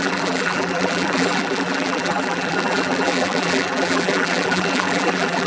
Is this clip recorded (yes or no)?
no